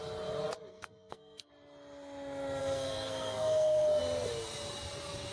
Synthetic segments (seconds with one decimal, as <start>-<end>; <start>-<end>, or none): 0.7-1.5; 2.6-4.0